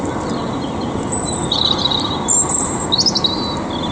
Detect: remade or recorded recorded